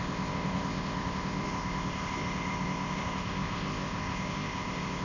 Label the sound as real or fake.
fake